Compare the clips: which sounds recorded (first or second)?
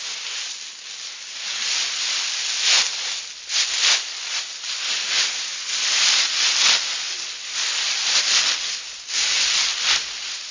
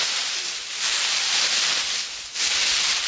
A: first